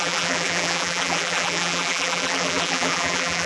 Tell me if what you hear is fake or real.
fake